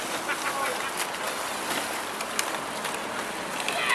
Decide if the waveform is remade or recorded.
recorded